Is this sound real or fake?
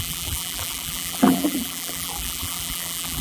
fake